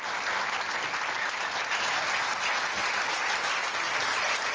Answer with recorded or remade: recorded